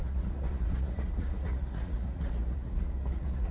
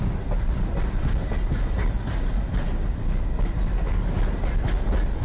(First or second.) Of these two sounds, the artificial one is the first